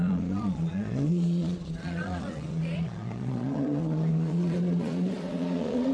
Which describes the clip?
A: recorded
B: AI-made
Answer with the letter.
B